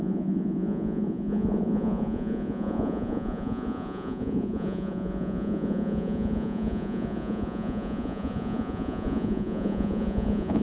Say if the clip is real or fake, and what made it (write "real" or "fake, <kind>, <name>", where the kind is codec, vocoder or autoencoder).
fake, vocoder, Vocos